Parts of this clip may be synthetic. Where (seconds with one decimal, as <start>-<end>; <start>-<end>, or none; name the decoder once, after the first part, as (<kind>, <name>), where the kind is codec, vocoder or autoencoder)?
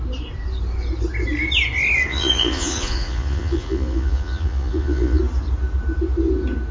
2.1-5.2 (vocoder, Vocos)